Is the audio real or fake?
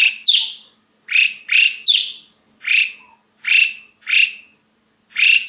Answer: real